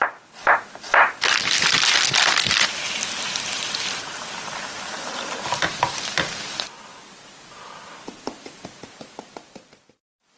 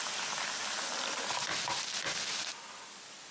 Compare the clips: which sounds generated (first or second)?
first